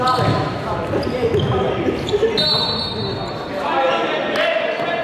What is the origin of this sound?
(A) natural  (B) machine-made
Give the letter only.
A